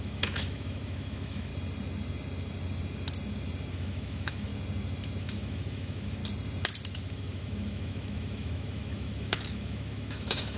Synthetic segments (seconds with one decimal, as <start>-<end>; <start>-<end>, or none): 0.0-1.5; 3.7-4.5; 5.2-6.2; 6.9-10.6